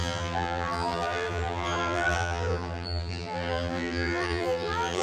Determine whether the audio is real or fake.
fake